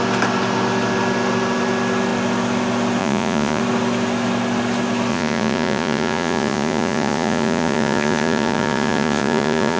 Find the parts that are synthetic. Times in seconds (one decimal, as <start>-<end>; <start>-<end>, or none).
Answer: 3.0-3.6; 5.1-9.8